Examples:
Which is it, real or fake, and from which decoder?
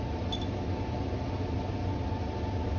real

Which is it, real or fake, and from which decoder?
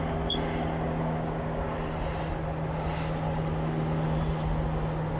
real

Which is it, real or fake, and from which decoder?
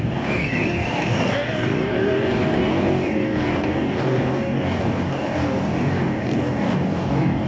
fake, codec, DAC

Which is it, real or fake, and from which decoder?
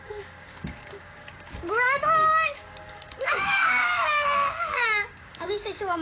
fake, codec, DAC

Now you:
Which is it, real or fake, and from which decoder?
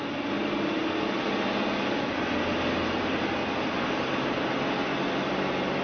real